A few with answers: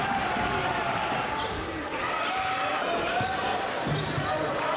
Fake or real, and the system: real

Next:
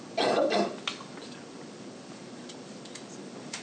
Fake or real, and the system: real